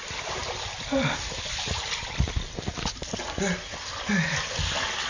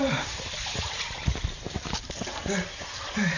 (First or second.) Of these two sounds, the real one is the first